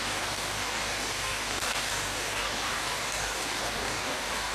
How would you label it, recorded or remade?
remade